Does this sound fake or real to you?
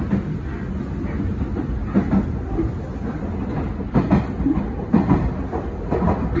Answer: real